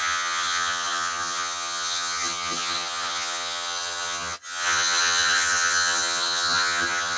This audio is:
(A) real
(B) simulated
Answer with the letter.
B